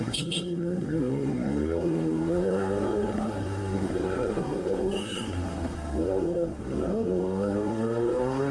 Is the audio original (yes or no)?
no